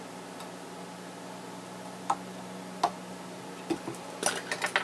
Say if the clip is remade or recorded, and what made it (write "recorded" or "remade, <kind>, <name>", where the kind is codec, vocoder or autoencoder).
recorded